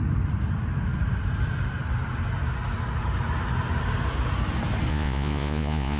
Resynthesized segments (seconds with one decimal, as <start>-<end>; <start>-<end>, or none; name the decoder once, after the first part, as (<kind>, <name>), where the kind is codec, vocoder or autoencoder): 4.9-6.0 (vocoder, Vocos)